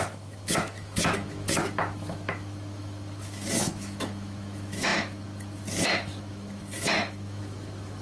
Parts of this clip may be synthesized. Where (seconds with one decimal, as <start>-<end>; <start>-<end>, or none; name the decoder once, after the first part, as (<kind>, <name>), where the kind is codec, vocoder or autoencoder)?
0.0-8.0 (autoencoder, DAC-VAE)